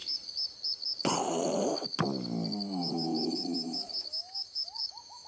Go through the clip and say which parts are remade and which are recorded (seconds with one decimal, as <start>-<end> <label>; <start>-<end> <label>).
0.0-2.9 recorded; 2.9-5.3 remade